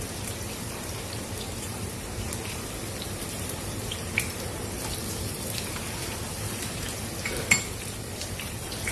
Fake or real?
fake